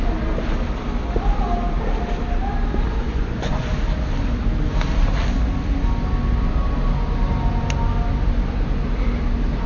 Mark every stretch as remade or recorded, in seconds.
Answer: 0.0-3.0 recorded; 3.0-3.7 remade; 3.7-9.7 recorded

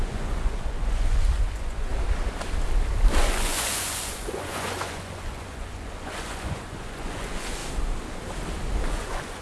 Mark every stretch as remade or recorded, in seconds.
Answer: 0.0-1.9 remade; 1.9-3.2 recorded; 3.2-7.6 remade; 7.6-8.9 recorded; 8.9-9.4 remade

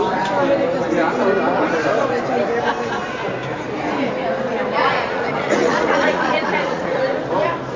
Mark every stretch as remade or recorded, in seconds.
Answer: 0.0-4.8 recorded; 4.8-7.0 remade; 7.0-7.8 recorded

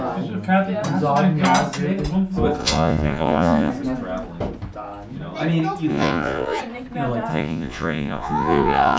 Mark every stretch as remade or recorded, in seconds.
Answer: 0.0-2.6 recorded; 2.6-3.7 remade; 3.7-5.9 recorded; 5.9-6.6 remade; 6.6-7.3 recorded; 7.3-9.0 remade

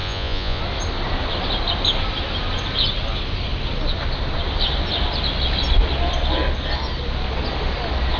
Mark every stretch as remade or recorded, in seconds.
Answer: 0.0-0.6 remade; 0.6-8.2 recorded

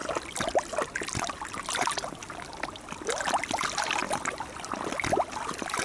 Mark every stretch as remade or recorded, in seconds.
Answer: 0.0-5.8 recorded